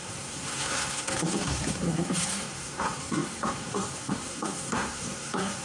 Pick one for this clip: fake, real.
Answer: fake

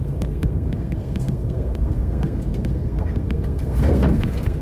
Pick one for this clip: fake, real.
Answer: fake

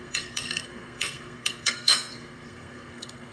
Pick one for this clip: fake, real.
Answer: fake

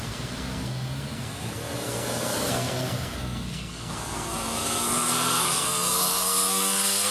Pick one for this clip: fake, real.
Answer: fake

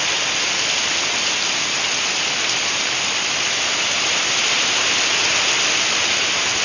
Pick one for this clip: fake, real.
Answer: real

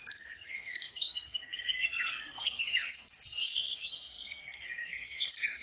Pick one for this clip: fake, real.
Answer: fake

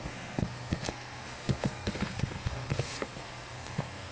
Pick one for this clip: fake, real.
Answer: fake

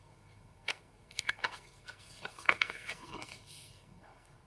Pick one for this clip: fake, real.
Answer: fake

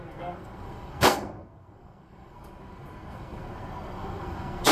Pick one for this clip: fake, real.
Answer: fake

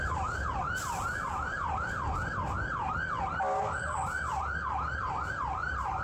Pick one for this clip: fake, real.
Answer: real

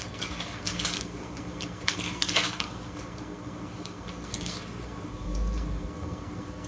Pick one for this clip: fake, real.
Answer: fake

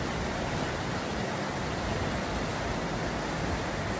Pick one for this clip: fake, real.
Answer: real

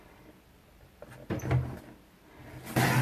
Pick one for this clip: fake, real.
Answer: real